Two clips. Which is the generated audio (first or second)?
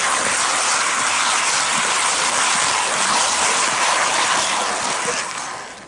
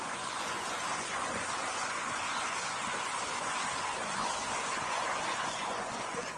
second